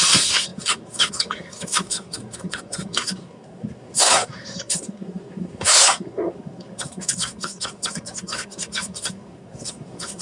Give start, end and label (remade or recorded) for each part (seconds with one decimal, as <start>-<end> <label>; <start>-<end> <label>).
0.0-10.2 remade